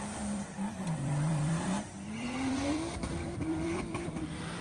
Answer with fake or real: fake